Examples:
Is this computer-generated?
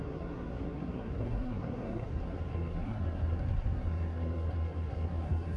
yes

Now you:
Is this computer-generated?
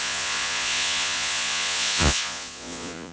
yes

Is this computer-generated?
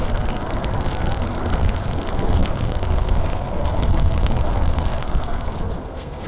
yes